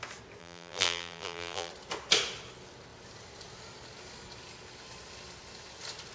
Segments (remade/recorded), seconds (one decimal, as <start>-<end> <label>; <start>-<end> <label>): 0.0-0.4 recorded; 0.4-1.7 remade; 1.7-6.1 recorded